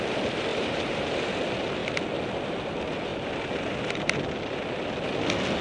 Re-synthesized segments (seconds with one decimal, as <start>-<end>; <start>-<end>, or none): 0.5-1.1